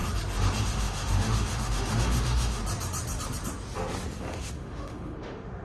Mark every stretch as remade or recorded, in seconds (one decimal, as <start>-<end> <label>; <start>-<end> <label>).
0.0-0.6 recorded; 0.6-2.6 remade; 2.6-4.2 recorded; 4.2-5.6 remade